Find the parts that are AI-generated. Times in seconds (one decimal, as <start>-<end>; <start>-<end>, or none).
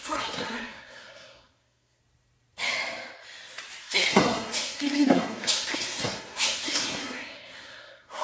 0.0-2.0; 3.8-8.2